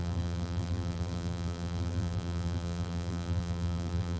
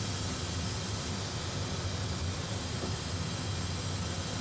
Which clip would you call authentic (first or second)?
second